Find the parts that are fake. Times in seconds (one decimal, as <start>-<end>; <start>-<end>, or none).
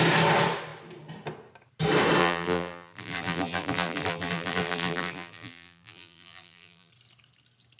2.2-6.9